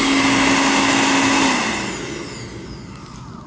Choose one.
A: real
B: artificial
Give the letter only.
A